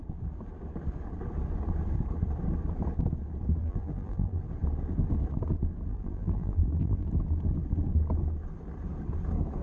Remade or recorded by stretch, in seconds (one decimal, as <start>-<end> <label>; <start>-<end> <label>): 0.0-3.6 recorded; 3.6-4.4 remade; 4.4-5.9 recorded; 5.9-7.1 remade; 7.1-9.6 recorded